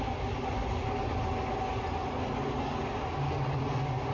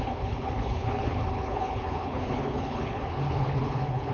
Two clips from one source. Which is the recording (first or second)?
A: first